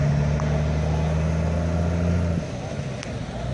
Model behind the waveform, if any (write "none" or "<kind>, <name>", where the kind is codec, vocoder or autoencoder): none